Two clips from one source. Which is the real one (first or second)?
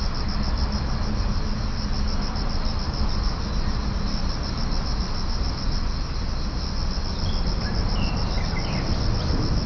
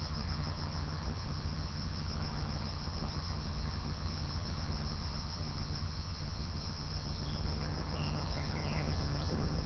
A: first